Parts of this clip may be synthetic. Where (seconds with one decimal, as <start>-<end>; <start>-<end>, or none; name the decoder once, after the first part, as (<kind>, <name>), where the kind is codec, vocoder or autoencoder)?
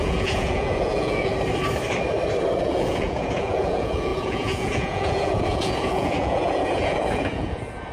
0.0-1.3 (vocoder, Vocos); 2.6-7.9